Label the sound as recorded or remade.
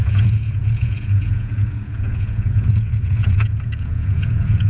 remade